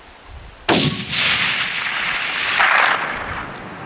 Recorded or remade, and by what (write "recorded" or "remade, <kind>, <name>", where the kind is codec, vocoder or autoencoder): recorded